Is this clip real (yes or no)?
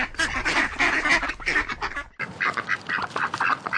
yes